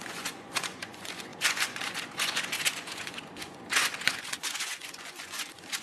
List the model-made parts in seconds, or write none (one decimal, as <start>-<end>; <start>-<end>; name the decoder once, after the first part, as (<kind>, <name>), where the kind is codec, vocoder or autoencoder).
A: 0.0-5.8 (vocoder, Vocos)